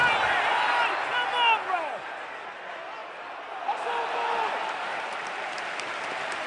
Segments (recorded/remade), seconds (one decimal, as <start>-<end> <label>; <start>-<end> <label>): 0.0-6.5 recorded